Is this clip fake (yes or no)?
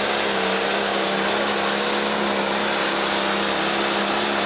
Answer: no